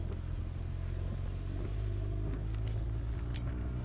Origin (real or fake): real